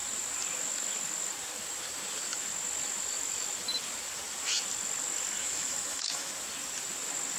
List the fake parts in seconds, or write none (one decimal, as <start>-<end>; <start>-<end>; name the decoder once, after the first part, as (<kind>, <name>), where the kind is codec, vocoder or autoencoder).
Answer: 5.4-6.3 (autoencoder, DAC-VAE)